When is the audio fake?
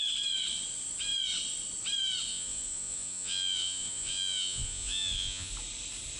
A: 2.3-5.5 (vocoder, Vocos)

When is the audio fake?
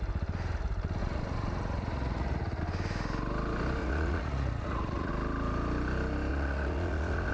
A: 1.0-2.6 (vocoder, Vocos); 3.8-5.1; 6.3-7.3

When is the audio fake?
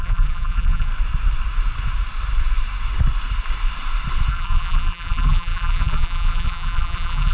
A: 0.0-0.9 (vocoder, BigVGAN v2); 4.3-7.3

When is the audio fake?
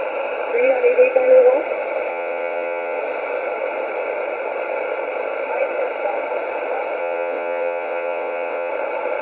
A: 2.1-3.0 (vocoder, WaveNeXt); 7.0-8.7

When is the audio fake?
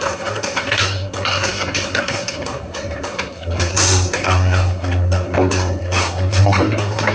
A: 0.0-7.1 (codec, SNAC)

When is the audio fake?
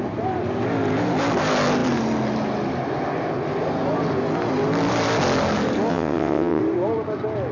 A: 5.9-6.6 (vocoder, WaveNeXt)